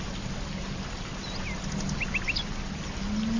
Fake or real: real